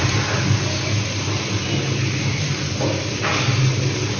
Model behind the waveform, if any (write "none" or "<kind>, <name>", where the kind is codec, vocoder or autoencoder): none